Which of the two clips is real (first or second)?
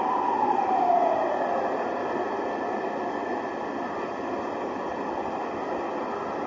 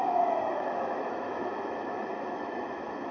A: first